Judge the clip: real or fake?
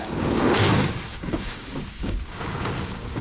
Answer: fake